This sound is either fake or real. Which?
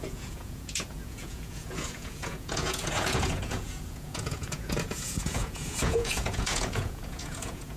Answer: fake